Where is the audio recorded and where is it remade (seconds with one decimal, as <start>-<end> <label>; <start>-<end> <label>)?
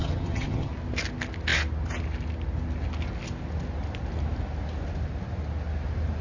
0.0-0.7 remade; 0.7-6.2 recorded